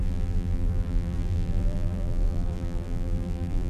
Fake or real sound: fake